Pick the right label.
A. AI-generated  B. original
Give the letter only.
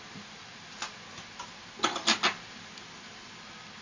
B